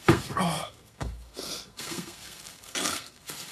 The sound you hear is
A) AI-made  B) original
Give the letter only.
A